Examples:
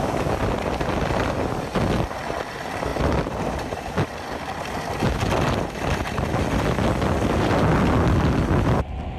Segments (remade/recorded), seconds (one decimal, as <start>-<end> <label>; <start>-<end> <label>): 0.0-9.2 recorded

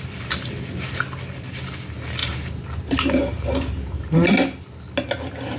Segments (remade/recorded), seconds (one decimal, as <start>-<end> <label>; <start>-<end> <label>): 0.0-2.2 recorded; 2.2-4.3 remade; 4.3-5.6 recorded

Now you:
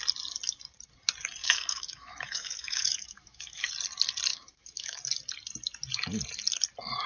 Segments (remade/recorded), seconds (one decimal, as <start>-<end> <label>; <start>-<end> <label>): 0.0-1.4 recorded; 1.4-3.7 remade; 3.7-4.3 recorded; 4.3-5.0 remade; 5.0-7.1 recorded

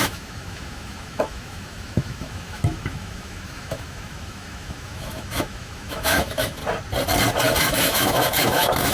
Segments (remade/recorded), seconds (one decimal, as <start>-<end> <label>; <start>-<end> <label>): 0.0-6.6 remade; 6.6-7.6 recorded; 7.6-8.9 remade

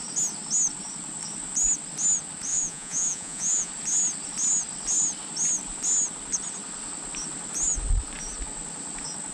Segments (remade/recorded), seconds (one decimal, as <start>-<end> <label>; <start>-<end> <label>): 0.0-2.5 recorded; 2.5-3.7 remade; 3.7-9.3 recorded

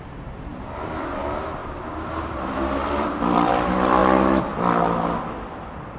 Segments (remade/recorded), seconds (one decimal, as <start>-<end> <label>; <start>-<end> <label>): 0.0-0.5 recorded; 0.5-1.2 remade; 1.2-1.6 recorded; 1.6-3.5 remade; 3.5-6.0 recorded

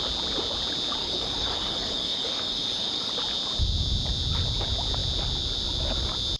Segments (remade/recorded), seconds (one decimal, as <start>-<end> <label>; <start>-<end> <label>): 0.0-1.0 recorded; 1.0-3.1 remade; 3.1-6.4 recorded

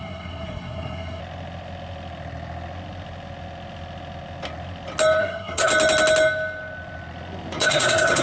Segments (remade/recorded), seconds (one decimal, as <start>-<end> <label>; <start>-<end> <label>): 0.0-1.2 remade; 1.2-5.2 recorded; 5.2-5.7 remade; 5.7-7.6 recorded; 7.6-8.2 remade